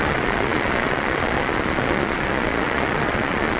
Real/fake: fake